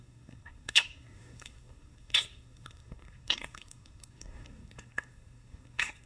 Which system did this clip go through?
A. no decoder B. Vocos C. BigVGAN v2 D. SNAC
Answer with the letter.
D